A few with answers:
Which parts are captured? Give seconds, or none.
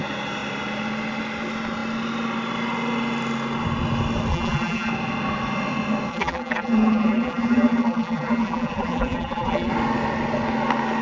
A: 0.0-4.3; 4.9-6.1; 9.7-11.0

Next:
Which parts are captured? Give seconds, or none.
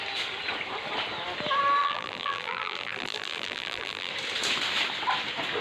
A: 0.0-1.8; 4.1-5.6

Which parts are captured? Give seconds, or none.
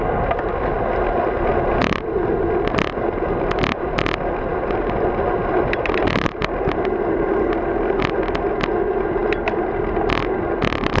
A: 0.0-11.0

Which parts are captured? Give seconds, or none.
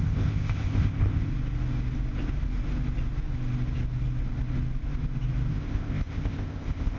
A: 1.3-5.5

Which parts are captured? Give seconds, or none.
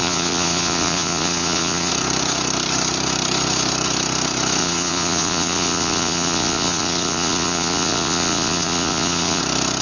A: 1.9-4.6; 9.4-9.8